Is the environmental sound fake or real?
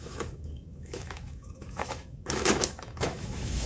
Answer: fake